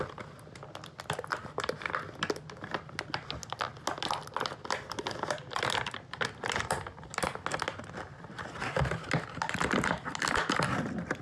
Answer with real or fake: real